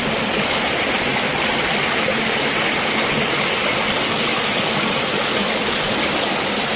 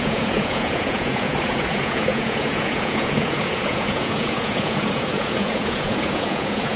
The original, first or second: first